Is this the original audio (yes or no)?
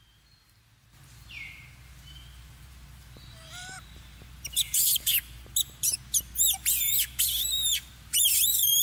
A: no